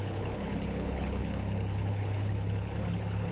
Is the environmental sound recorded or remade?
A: remade